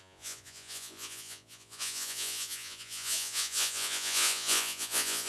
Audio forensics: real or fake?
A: fake